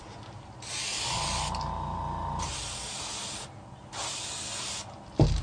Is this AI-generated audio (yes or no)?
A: no